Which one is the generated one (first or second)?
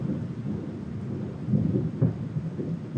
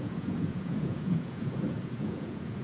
second